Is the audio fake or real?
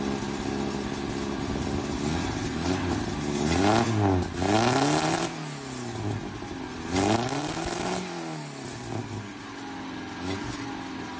real